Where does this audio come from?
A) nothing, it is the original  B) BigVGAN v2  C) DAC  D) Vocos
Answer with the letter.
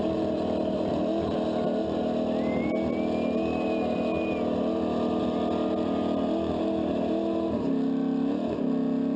A